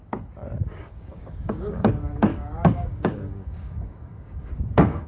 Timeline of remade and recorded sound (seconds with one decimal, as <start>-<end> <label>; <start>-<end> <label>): 0.0-0.6 recorded; 0.6-1.9 remade; 1.9-2.3 recorded; 2.3-5.1 remade